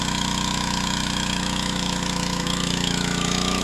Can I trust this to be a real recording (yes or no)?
no